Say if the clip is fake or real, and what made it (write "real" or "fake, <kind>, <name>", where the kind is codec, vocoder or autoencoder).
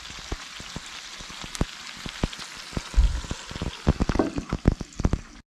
real